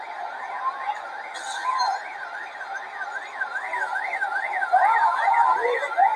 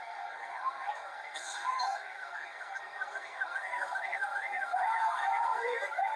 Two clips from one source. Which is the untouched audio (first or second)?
first